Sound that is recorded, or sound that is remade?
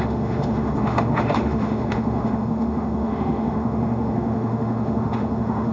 remade